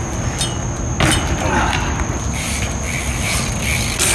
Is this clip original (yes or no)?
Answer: yes